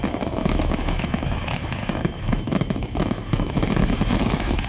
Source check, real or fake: fake